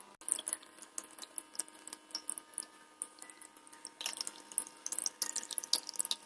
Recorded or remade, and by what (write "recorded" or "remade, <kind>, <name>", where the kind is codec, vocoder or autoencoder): recorded